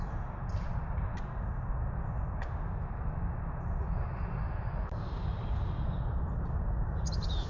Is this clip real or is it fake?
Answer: real